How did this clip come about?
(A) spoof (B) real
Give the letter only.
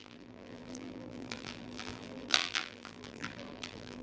A